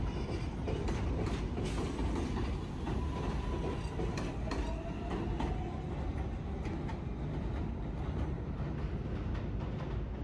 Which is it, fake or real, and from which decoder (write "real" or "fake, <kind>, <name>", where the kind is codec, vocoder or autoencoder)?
real